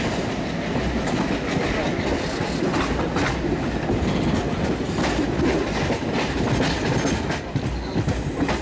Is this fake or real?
real